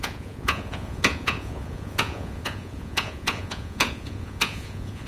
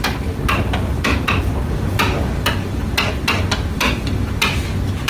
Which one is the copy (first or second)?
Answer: first